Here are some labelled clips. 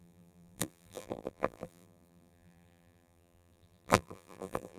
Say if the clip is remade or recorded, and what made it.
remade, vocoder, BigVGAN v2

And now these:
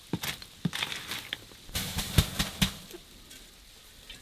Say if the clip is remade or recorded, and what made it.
recorded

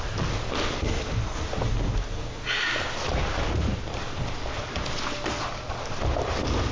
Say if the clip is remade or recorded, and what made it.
recorded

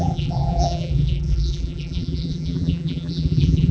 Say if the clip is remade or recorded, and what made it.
remade, vocoder, BigVGAN v2